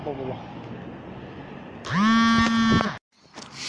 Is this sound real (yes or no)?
yes